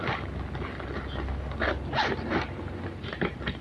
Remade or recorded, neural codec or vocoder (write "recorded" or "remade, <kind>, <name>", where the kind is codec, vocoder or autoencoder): recorded